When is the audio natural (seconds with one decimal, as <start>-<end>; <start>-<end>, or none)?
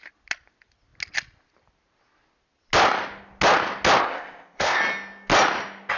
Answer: 0.0-4.0; 4.8-6.0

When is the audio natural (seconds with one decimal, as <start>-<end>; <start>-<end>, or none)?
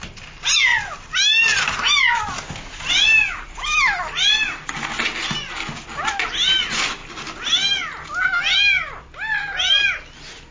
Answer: 0.0-10.5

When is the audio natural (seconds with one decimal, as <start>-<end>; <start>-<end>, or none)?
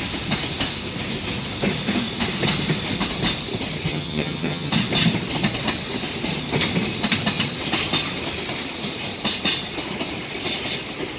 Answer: 0.0-3.9; 4.7-11.2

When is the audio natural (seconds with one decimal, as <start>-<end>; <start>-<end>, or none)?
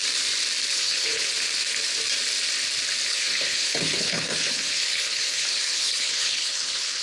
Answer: 0.0-0.7; 1.3-3.1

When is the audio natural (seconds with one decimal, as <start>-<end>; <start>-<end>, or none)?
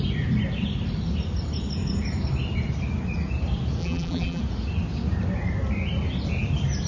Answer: 0.0-3.8; 4.4-6.9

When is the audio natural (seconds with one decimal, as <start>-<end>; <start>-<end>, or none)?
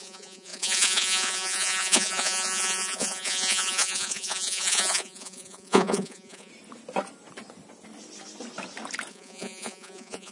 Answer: 6.5-9.1